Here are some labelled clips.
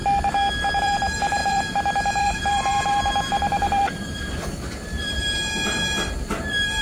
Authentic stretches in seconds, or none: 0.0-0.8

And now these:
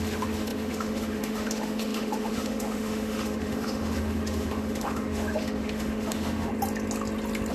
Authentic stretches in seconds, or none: 6.5-7.5

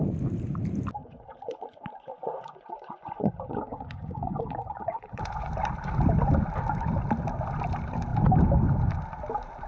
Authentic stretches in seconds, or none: 0.0-1.0; 5.5-9.7

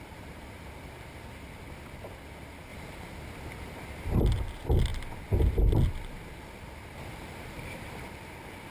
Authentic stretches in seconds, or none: 4.9-5.5

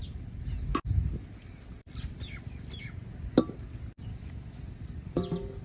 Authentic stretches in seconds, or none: 0.0-4.1; 4.6-5.6

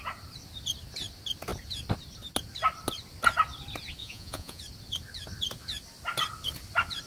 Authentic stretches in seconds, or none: 0.0-4.0; 4.6-7.1

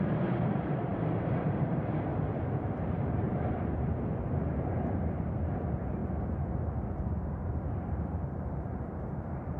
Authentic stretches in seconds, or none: 2.1-2.9; 6.0-7.0